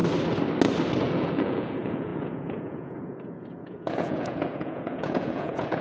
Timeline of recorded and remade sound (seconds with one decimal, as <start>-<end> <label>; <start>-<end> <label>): 0.0-1.0 recorded; 1.0-5.8 remade